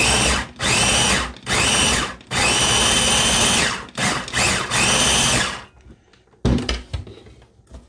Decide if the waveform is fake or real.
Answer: real